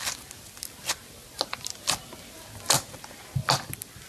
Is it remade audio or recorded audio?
recorded